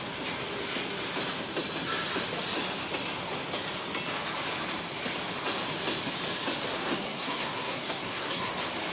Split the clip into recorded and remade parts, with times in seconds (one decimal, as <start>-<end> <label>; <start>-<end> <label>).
0.0-6.7 recorded; 6.7-8.5 remade; 8.5-8.9 recorded

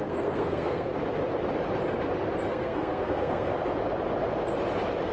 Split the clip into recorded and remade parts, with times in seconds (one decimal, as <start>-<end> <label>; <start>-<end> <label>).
0.0-0.9 remade; 0.9-2.5 recorded; 2.5-3.5 remade; 3.5-5.1 recorded